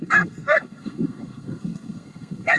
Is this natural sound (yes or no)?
no